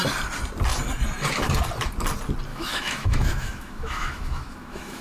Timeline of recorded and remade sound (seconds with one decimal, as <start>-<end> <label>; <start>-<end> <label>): 0.0-2.5 recorded; 2.5-5.0 remade